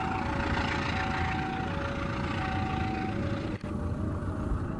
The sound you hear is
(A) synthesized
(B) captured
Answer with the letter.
B